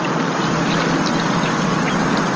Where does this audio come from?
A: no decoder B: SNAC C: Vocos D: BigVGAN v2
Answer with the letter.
A